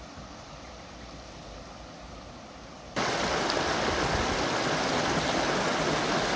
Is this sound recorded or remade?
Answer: recorded